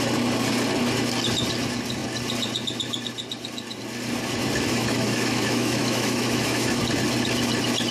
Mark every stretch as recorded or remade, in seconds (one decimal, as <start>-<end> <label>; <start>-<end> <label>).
0.0-4.7 recorded; 4.7-6.8 remade; 6.8-7.9 recorded